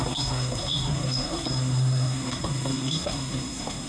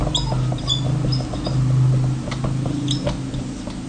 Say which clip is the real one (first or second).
second